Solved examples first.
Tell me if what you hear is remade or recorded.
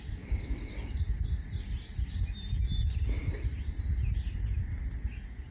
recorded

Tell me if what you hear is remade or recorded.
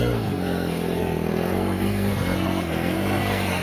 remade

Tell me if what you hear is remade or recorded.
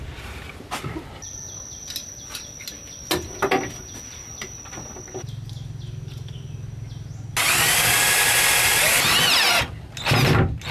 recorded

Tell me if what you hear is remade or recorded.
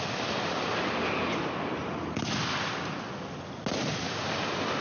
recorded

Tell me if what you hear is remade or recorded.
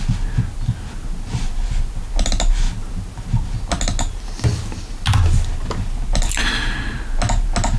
recorded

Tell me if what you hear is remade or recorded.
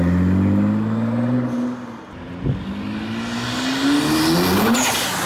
recorded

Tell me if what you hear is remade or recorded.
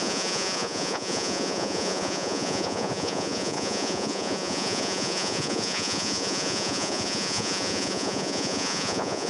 remade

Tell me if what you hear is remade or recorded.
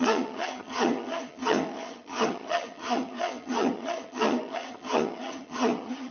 remade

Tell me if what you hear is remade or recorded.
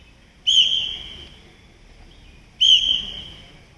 recorded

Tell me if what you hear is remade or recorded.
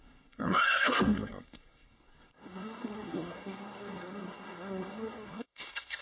remade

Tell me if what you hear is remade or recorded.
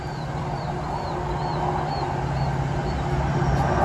recorded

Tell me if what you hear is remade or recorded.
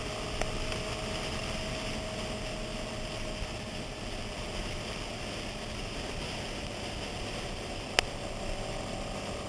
recorded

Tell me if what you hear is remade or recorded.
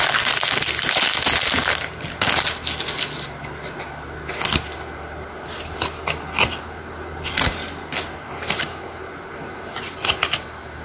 recorded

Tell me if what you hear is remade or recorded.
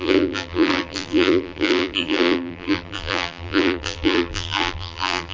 remade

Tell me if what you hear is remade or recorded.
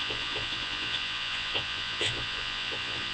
remade